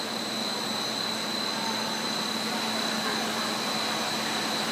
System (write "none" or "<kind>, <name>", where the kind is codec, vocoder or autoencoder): none